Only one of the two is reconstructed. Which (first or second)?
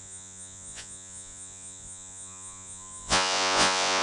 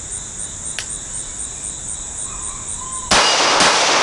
first